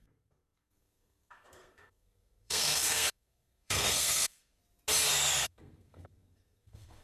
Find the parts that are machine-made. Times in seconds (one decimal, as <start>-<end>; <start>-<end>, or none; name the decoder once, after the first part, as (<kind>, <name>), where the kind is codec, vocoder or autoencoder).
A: 0.0-4.6 (codec, SNAC); 5.4-7.0